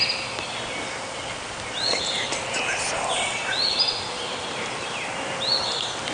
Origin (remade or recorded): recorded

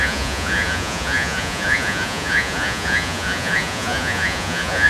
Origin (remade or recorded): remade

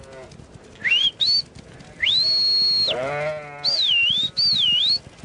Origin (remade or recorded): recorded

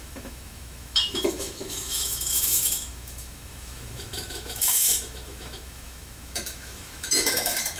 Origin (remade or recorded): remade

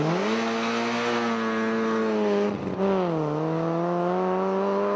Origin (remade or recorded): recorded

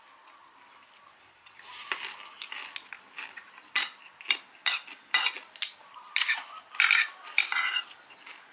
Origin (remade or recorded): recorded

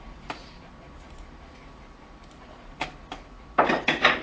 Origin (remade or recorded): remade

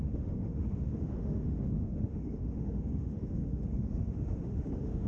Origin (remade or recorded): remade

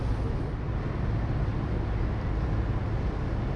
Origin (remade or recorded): recorded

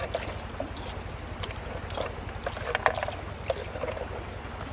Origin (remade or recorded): recorded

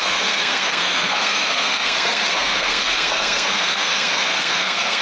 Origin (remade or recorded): remade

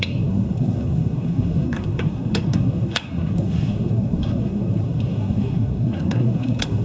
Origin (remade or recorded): remade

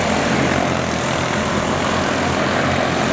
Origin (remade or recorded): recorded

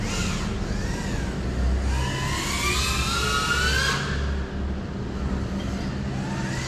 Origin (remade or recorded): recorded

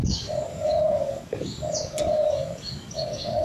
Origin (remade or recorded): remade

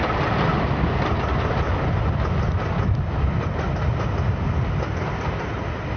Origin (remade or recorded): recorded